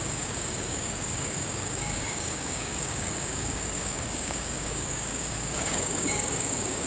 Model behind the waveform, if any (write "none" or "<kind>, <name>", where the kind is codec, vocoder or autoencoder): codec, DAC